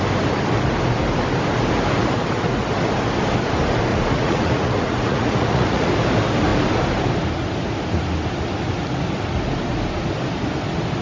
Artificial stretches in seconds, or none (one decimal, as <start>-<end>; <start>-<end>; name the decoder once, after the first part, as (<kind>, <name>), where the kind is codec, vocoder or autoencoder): 3.9-5.9 (vocoder, Vocos)

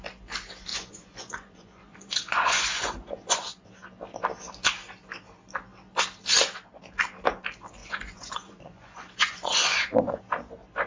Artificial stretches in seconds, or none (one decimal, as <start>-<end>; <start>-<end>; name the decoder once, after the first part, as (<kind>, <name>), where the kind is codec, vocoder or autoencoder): 0.7-3.7 (vocoder, Vocos); 7.8-10.2

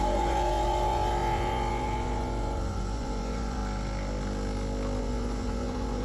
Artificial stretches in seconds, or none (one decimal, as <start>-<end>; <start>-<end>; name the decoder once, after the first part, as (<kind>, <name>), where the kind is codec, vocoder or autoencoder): 0.0-3.6 (vocoder, Vocos); 5.0-6.0